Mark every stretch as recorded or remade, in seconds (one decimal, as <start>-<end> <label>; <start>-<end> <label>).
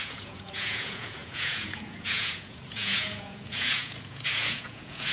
0.0-5.1 remade